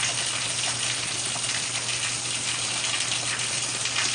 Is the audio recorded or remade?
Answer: recorded